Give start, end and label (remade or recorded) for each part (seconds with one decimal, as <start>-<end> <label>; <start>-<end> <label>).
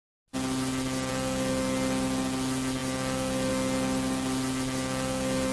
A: 0.0-5.5 recorded